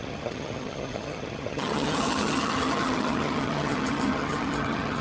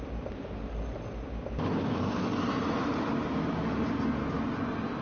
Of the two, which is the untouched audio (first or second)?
second